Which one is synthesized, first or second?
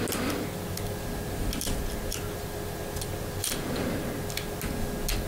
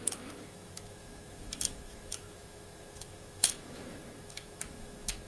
second